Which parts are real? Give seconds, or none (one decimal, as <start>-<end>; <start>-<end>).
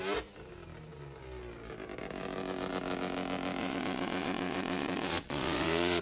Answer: 0.0-3.6